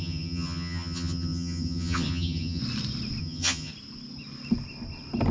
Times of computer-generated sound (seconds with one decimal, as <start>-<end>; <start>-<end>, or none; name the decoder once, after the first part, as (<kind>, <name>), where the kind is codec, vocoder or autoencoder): 0.0-2.6 (vocoder, HiFi-GAN); 3.2-3.7

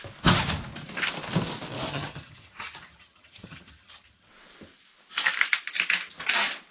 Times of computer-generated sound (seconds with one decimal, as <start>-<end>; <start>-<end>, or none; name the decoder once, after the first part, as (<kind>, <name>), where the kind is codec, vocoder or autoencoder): 1.9-4.3 (vocoder, HiFi-GAN)

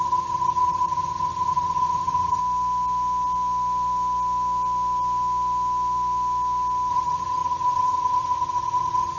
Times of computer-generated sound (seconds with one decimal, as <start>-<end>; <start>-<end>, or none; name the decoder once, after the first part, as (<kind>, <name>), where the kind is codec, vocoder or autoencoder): 0.0-2.4 (vocoder, HiFi-GAN); 6.9-9.2